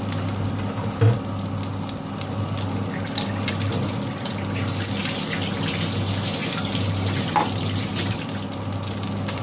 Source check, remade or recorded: recorded